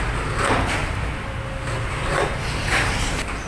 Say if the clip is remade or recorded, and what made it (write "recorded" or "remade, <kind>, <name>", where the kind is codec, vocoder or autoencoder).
recorded